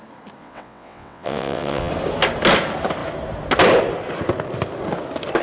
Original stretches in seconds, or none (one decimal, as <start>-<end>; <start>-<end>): 0.0-0.4; 1.9-5.4

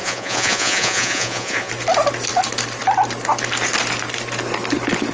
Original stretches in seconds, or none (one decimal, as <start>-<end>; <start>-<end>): 1.7-5.1

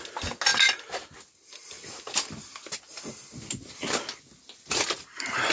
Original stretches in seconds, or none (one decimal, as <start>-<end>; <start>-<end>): 0.0-5.5

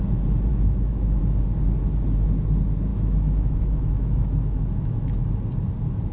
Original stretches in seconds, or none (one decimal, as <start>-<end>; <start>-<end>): 0.0-0.5; 1.2-2.9; 5.2-6.1

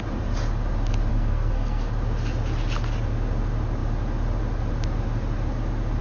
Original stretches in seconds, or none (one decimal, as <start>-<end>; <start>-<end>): 0.0-1.1; 1.9-6.0

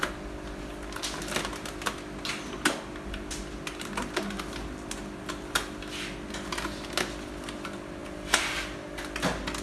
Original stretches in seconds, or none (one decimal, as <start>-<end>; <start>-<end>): 0.0-9.6